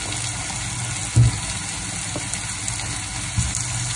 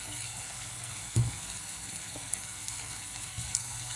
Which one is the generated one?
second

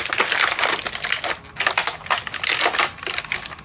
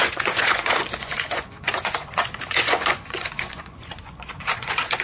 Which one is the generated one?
second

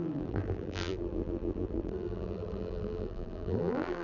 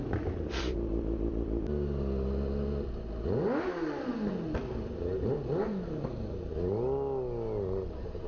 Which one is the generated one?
first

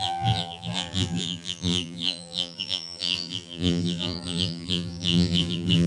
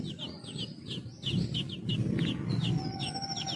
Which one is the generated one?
first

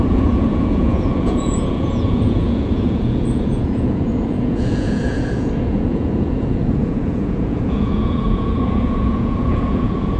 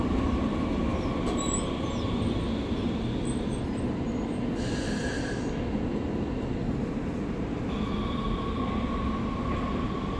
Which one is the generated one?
first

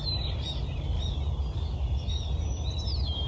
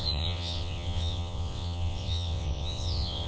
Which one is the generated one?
second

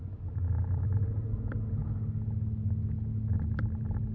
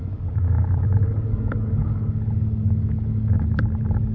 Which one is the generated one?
second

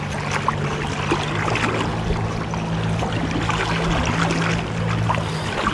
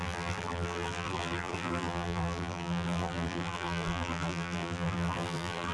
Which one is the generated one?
second